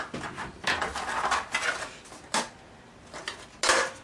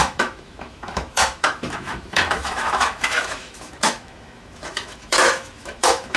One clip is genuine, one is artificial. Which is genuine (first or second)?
first